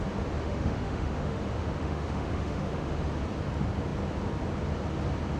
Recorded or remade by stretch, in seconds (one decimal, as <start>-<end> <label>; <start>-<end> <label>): 0.0-0.4 recorded; 0.4-1.4 remade; 1.4-1.8 recorded; 1.8-3.0 remade; 3.0-5.4 recorded